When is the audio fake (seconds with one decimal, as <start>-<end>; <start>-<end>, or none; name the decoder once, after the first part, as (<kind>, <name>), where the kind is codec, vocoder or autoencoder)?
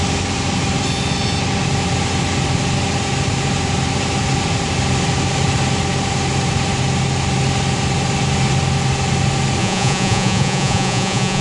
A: 9.6-11.4 (vocoder, Vocos)